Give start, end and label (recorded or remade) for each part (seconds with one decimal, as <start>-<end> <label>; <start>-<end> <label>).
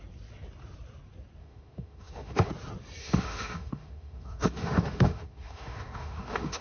0.0-1.4 recorded; 1.4-2.5 remade; 2.5-3.0 recorded; 3.0-6.6 remade